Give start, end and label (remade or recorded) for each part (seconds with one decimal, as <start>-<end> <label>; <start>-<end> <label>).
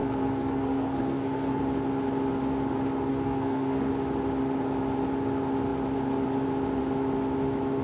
0.0-1.6 remade; 1.6-3.1 recorded; 3.1-3.9 remade; 3.9-7.8 recorded